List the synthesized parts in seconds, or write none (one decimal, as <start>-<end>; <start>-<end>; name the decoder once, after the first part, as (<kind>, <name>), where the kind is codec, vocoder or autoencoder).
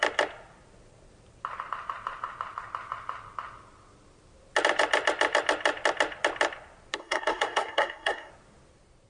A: 7.0-8.3 (codec, SNAC)